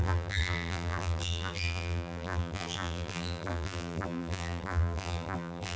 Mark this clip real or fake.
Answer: fake